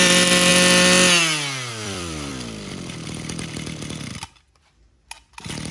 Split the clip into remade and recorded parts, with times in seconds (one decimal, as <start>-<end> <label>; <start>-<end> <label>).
0.0-0.5 remade; 0.5-1.7 recorded; 1.7-2.3 remade; 2.3-5.7 recorded